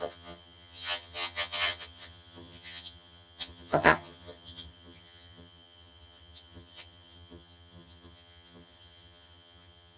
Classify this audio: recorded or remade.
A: remade